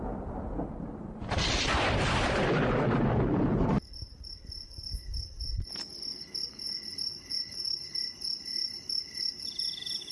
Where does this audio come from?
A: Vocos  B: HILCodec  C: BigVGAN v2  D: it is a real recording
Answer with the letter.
C